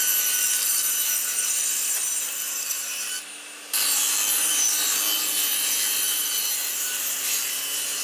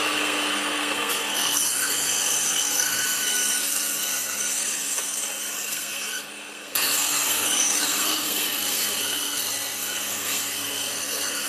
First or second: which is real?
first